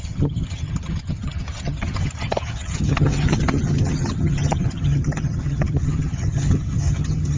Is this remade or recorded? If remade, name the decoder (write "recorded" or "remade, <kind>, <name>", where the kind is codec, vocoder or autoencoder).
remade, vocoder, HiFi-GAN